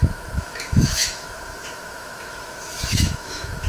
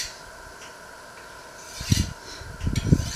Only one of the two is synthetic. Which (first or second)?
first